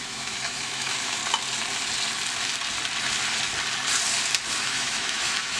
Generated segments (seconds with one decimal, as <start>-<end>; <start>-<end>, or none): 0.0-1.2; 4.6-5.6